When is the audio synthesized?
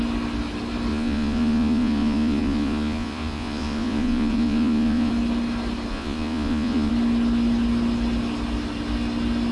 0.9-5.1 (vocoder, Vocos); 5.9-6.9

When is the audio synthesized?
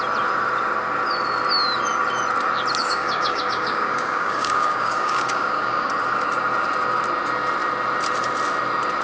2.8-5.9 (codec, DAC)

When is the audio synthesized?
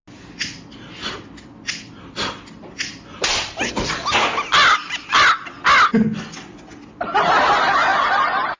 none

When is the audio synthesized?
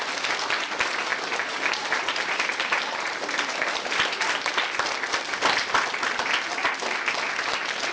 1.1-4.5 (vocoder, BigVGAN v2)